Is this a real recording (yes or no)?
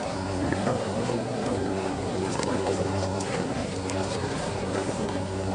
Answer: no